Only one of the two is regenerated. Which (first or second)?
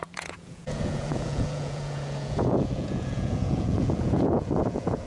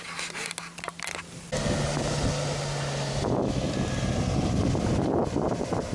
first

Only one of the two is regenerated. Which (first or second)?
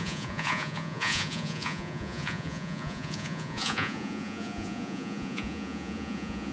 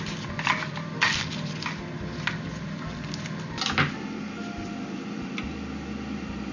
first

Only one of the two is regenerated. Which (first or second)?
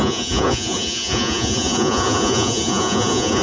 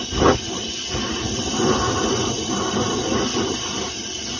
first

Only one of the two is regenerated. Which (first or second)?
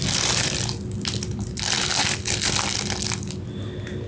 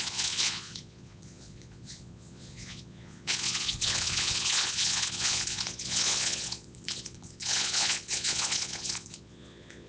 second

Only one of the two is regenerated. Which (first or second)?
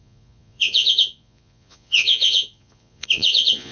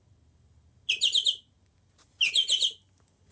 first